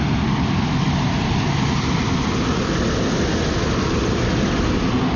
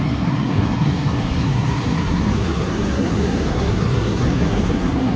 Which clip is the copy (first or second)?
second